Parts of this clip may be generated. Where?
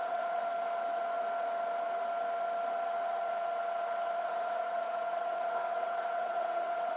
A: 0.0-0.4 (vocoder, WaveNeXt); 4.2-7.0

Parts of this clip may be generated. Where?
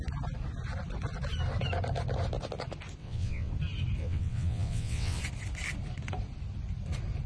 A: 3.0-3.5 (vocoder, WaveNeXt); 4.0-5.2